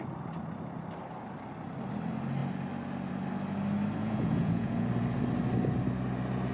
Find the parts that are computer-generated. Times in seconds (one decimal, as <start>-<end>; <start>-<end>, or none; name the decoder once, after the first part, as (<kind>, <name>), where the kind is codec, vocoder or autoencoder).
4.0-4.9 (vocoder, Vocos)